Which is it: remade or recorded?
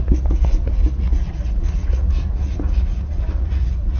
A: remade